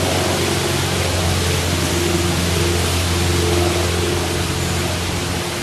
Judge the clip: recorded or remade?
recorded